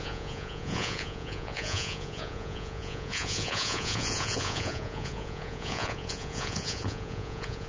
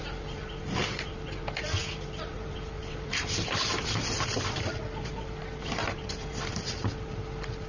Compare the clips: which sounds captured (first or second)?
second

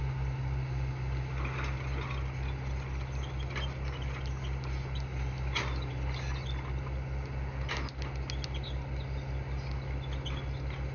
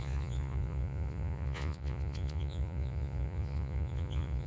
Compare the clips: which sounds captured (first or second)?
first